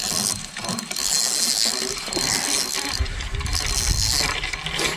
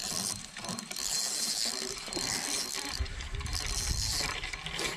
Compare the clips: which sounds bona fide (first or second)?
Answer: first